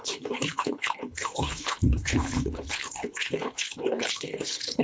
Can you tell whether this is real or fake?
fake